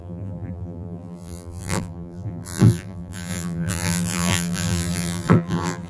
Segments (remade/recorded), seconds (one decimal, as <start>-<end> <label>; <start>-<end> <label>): 0.0-5.9 remade